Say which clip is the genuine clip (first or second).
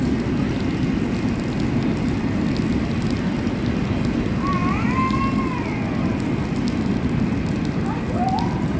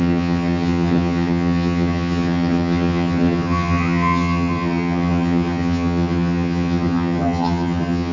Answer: first